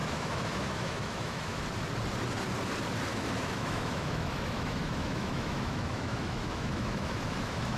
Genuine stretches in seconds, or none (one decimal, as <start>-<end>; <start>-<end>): 1.6-3.1